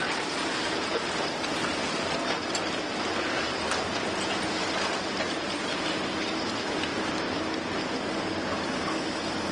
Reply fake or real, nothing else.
real